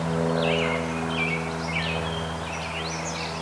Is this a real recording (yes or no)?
yes